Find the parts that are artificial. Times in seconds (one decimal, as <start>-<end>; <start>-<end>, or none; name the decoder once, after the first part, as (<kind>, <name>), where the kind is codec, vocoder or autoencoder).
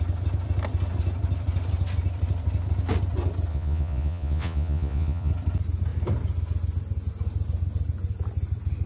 3.5-5.3 (vocoder, Vocos)